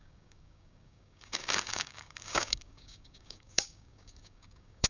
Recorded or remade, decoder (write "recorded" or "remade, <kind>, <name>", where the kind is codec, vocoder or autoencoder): remade, codec, DAC